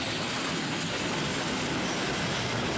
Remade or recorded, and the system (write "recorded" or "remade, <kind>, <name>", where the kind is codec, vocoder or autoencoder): recorded